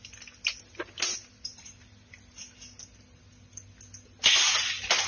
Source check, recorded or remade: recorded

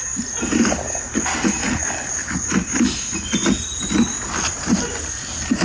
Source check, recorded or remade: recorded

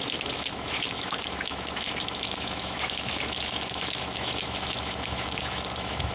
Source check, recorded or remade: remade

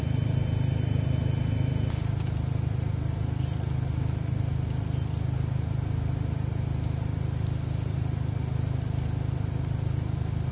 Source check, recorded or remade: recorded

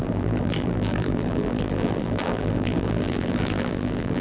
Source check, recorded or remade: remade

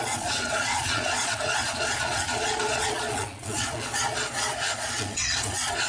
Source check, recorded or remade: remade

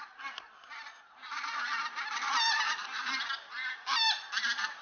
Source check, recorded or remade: remade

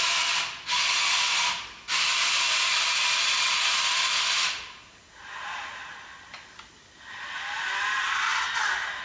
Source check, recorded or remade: recorded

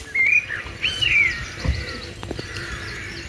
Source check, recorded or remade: remade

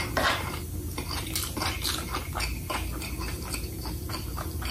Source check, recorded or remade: recorded